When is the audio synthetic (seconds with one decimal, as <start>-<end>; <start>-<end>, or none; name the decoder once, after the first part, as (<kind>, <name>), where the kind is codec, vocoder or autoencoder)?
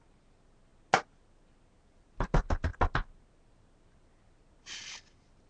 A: none